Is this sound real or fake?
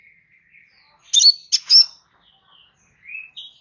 real